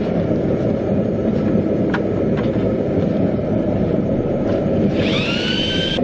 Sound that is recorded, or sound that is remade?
remade